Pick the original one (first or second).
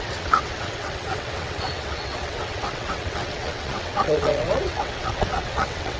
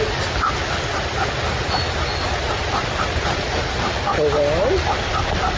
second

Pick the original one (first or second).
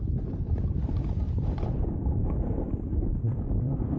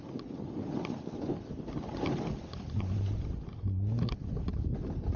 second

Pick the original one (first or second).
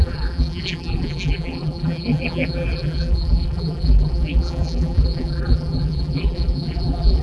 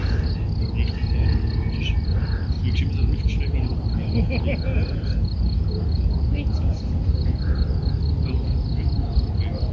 second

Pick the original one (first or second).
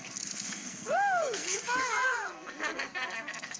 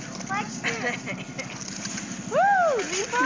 second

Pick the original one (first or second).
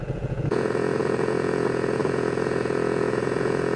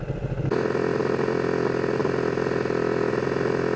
second